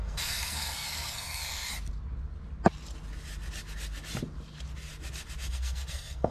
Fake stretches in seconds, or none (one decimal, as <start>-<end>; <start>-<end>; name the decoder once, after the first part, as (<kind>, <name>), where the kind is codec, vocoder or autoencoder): 0.0-1.7 (codec, SNAC); 5.5-6.3